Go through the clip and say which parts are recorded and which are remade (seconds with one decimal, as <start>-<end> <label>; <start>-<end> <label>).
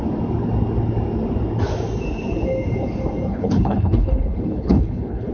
0.0-3.3 recorded; 3.3-5.3 remade